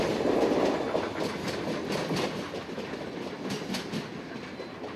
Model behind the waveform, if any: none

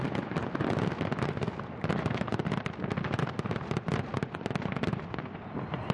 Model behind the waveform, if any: none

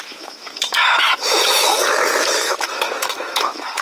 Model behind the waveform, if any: autoencoder, DAC-VAE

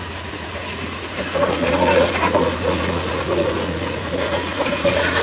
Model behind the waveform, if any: vocoder, Vocos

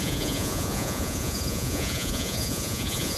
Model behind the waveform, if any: vocoder, Vocos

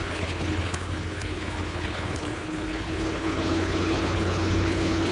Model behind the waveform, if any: codec, HILCodec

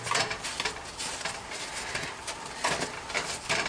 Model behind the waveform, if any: none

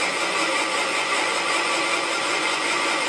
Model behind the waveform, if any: vocoder, Vocos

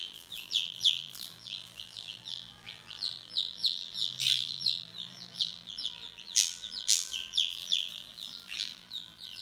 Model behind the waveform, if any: vocoder, BigVGAN v2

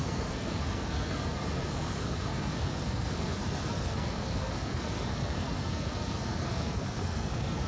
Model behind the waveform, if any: codec, SNAC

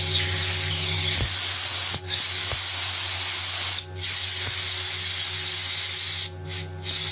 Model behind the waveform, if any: none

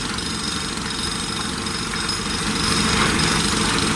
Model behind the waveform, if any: none